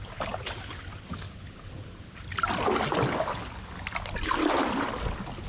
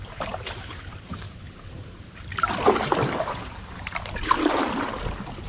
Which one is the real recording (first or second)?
first